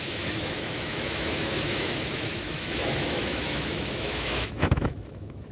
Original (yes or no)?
no